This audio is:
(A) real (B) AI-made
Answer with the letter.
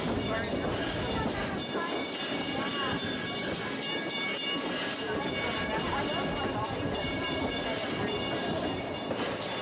B